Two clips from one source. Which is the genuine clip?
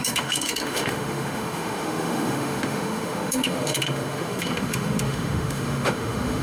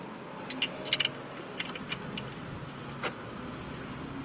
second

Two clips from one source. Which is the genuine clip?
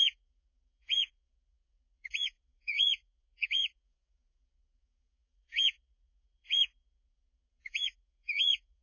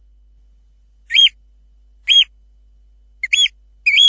second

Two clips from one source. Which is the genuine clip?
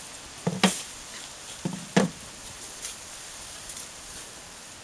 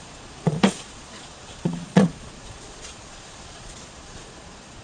first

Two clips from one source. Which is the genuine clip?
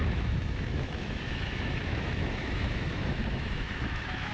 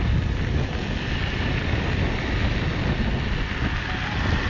second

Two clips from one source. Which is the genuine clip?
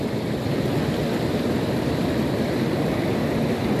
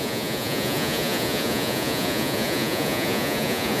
first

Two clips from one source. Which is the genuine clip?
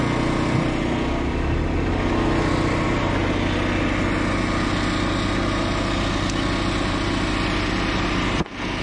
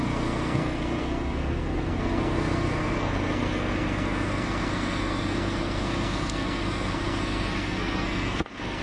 first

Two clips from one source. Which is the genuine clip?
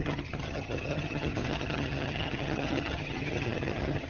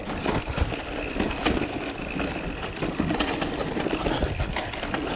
second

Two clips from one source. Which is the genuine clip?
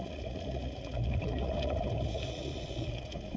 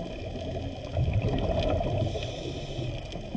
second